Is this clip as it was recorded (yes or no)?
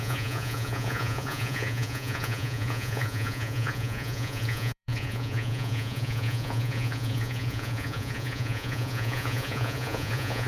no